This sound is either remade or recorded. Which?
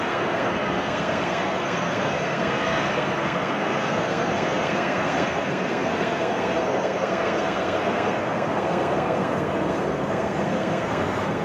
remade